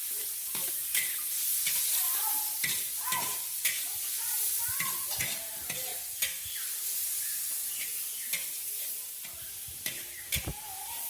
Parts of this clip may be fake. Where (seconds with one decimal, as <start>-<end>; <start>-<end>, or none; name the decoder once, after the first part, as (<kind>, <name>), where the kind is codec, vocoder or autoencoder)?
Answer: none